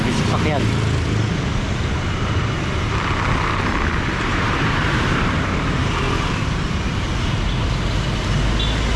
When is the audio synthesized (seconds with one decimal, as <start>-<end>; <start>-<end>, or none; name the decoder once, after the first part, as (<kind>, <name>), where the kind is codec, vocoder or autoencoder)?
4.3-5.9 (vocoder, BigVGAN v2)

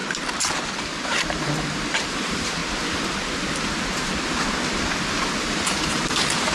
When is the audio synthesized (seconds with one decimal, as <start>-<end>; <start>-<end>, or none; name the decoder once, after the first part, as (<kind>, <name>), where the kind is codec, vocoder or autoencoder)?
0.8-2.6 (vocoder, BigVGAN v2); 5.4-6.5

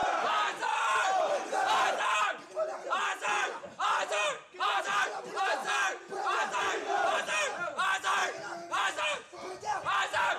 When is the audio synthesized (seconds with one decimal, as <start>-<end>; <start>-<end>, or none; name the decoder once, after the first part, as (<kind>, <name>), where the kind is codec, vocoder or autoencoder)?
none

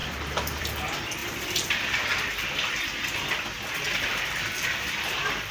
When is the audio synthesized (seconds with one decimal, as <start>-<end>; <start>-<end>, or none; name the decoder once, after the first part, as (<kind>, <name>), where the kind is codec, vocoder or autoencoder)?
1.2-2.7 (vocoder, BigVGAN v2); 4.1-5.5

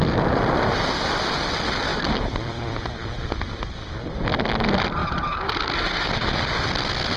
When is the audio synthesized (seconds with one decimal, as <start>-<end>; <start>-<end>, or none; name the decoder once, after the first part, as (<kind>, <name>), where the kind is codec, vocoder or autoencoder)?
1.9-3.9 (vocoder, BigVGAN v2); 5.0-6.5

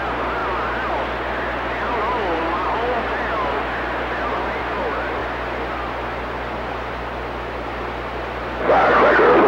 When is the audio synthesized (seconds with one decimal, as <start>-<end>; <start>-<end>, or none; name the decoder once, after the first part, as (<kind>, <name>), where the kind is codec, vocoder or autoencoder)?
none